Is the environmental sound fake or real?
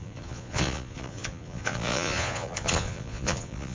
fake